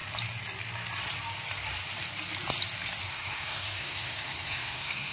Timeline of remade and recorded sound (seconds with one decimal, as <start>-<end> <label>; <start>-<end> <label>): 0.0-3.0 recorded; 3.0-5.1 remade